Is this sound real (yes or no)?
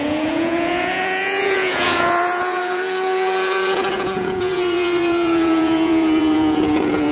no